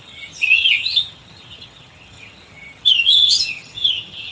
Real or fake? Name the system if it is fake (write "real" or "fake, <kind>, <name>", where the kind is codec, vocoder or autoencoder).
fake, vocoder, HiFi-GAN